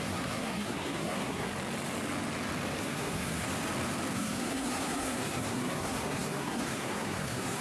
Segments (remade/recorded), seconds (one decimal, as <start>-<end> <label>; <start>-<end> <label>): 0.0-1.5 remade; 1.5-2.8 recorded; 2.8-3.5 remade; 3.5-4.1 recorded; 4.1-7.6 remade